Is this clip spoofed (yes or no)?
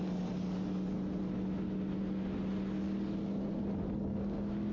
no